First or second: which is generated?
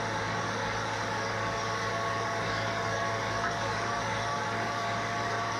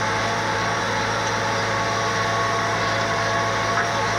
first